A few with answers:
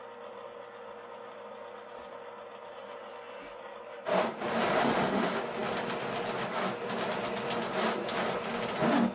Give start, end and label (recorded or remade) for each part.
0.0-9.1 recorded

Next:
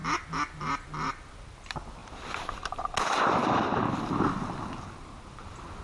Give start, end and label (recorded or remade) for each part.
0.0-5.8 recorded

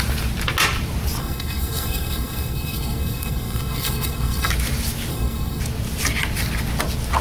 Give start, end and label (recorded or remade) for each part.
0.0-1.2 recorded; 1.2-4.5 remade; 4.5-5.1 recorded; 5.1-5.6 remade; 5.6-7.2 recorded

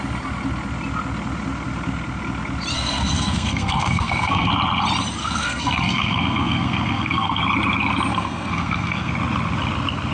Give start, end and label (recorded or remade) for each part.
0.0-2.7 recorded; 2.7-4.5 remade; 4.5-5.2 recorded; 5.2-7.4 remade; 7.4-8.1 recorded; 8.1-9.1 remade; 9.1-10.1 recorded

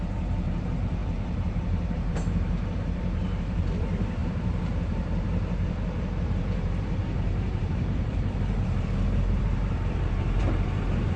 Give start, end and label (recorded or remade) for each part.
0.0-11.2 remade